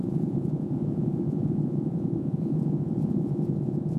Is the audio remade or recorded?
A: remade